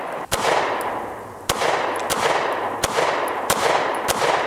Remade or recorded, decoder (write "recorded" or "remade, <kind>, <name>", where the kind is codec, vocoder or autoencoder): recorded